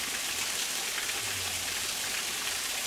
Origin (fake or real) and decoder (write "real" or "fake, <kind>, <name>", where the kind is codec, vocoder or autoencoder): real